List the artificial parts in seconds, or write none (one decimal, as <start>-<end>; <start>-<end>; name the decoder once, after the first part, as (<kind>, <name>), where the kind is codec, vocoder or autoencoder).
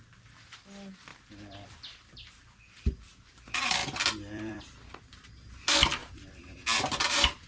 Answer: 1.1-2.3 (vocoder, BigVGAN v2); 3.8-4.6; 6.0-7.5